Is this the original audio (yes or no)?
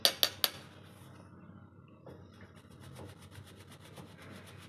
yes